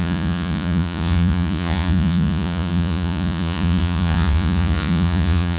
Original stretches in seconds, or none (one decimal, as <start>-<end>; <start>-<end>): none